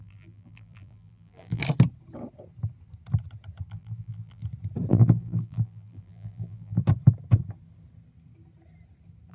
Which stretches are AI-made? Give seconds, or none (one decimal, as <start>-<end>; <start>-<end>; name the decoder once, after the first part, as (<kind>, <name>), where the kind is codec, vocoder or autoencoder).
0.0-1.6 (vocoder, BigVGAN v2); 3.7-4.4; 4.9-6.8